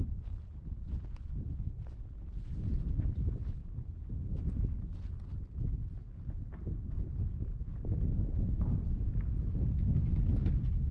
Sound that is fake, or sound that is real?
real